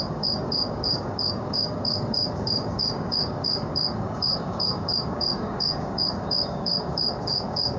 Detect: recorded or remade remade